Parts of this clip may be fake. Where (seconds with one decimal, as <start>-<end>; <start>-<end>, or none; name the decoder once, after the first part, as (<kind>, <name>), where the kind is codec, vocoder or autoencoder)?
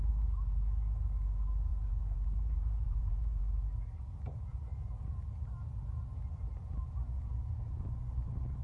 1.7-3.4 (vocoder, Vocos)